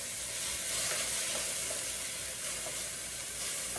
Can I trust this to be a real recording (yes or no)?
yes